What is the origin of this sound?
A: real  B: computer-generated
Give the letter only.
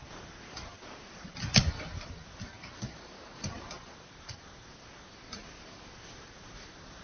B